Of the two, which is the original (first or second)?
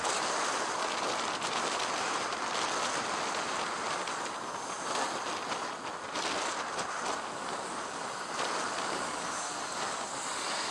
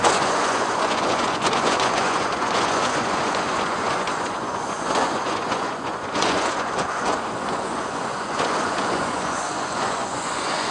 first